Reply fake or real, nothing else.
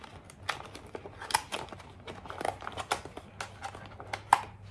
real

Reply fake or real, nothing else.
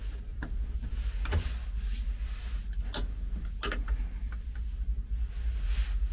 real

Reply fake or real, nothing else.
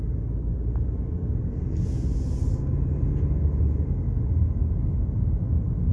real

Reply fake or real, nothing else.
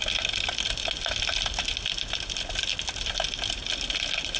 real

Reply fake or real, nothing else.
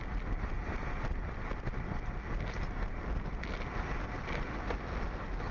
real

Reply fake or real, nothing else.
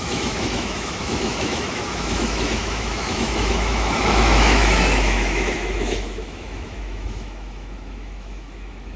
fake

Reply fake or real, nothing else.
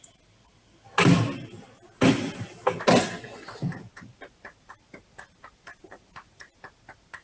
real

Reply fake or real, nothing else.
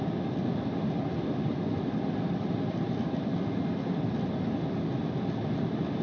real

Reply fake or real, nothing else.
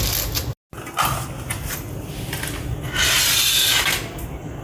real